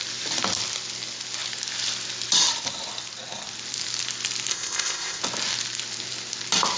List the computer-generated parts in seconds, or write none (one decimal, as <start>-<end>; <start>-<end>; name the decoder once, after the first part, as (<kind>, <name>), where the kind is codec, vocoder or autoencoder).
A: 4.5-5.2 (codec, ZipCodec)